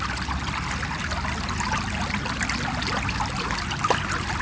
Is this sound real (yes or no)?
yes